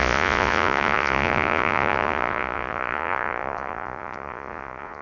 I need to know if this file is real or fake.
fake